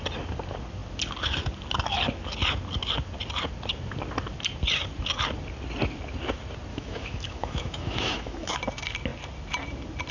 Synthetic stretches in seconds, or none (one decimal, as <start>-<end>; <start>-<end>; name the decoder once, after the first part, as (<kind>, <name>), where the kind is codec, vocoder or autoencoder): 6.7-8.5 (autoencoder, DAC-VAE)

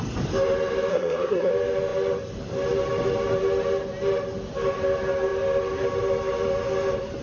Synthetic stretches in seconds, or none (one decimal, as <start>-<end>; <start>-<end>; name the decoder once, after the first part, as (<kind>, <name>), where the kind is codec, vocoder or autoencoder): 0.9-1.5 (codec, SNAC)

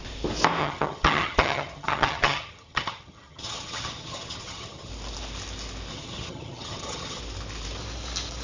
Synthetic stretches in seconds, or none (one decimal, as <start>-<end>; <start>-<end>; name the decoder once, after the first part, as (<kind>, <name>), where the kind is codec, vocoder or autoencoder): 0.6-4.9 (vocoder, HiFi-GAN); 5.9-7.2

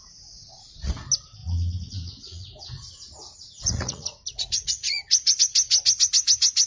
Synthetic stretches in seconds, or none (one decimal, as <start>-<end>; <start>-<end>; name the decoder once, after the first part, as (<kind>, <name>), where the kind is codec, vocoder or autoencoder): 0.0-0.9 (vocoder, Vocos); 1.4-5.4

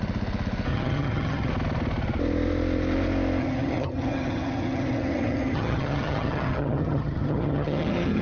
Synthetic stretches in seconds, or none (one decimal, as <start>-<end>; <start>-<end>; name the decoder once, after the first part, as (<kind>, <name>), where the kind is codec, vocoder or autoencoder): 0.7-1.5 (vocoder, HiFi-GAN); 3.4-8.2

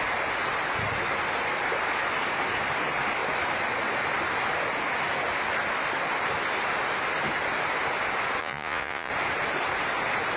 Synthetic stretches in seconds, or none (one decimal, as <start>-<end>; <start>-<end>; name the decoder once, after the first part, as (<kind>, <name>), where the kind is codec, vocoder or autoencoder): 8.4-9.1 (vocoder, Vocos)